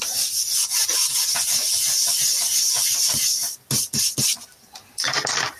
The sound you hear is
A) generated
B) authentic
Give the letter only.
B